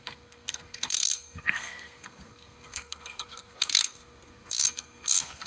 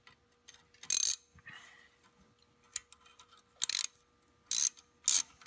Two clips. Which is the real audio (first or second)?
second